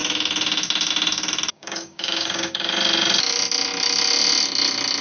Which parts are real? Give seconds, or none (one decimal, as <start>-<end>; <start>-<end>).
0.0-1.5; 2.7-5.0